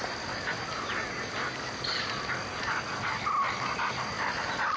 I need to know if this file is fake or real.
real